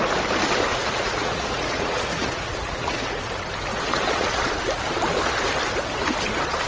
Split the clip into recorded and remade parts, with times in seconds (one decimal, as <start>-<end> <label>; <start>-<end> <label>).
0.0-0.7 recorded; 0.7-3.2 remade; 3.2-3.7 recorded; 3.7-4.4 remade; 4.4-6.7 recorded